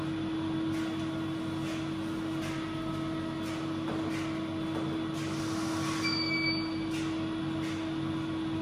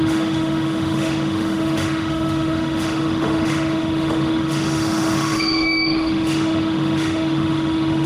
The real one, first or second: first